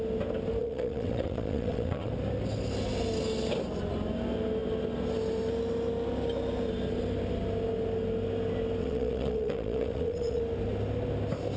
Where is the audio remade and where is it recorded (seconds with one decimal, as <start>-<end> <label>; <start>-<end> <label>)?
0.0-0.6 recorded; 0.6-2.1 remade; 2.1-8.8 recorded; 8.8-10.4 remade; 10.4-11.6 recorded